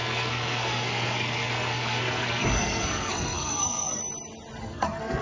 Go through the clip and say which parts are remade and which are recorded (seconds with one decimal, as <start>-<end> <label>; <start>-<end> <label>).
0.0-4.0 remade; 4.0-4.6 recorded; 4.6-5.2 remade